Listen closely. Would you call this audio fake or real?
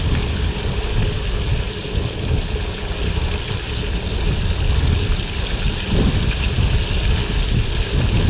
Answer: real